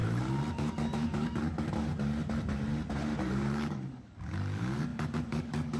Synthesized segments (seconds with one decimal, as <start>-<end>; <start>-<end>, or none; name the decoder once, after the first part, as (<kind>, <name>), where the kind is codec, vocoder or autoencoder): 0.5-1.9 (codec, DAC); 3.3-5.8